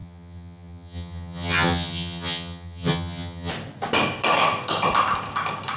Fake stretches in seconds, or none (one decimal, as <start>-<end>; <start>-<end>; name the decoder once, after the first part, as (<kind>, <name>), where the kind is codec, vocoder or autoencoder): 0.0-3.5 (vocoder, HiFi-GAN)